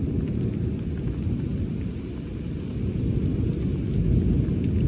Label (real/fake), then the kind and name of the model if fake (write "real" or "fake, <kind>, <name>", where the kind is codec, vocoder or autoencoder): real